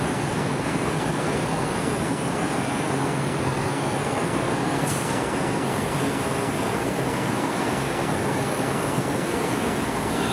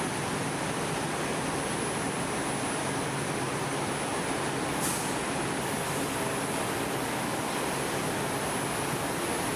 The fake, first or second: first